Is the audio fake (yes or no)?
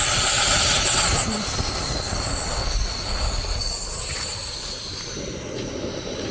no